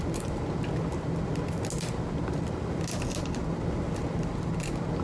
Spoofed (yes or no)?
no